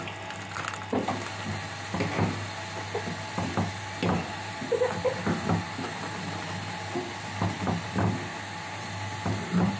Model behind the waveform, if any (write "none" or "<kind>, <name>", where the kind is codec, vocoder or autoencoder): none